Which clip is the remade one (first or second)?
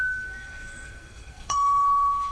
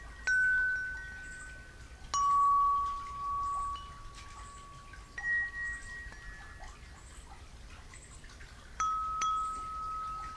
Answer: first